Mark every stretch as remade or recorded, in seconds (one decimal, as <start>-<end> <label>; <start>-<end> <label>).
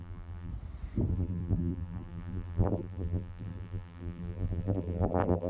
0.0-0.5 remade; 0.5-1.1 recorded; 1.1-5.5 remade